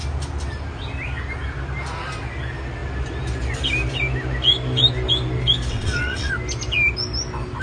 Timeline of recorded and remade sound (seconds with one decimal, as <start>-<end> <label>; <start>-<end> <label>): 0.0-5.7 recorded; 5.7-6.3 remade; 6.3-7.6 recorded